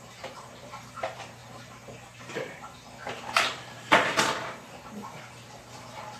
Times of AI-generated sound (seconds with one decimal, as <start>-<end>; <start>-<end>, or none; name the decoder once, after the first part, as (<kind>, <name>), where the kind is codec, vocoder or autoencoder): 0.0-1.4 (vocoder, BigVGAN v2); 2.2-6.2